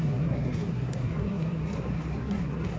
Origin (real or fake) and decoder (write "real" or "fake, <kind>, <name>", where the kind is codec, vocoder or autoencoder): fake, codec, SNAC